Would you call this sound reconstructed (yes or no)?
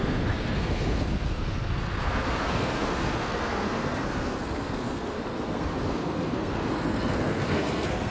yes